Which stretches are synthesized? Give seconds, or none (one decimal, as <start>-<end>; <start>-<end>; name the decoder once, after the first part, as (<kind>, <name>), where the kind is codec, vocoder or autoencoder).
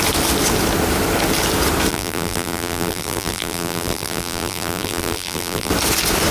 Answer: 1.9-5.7 (vocoder, BigVGAN v2)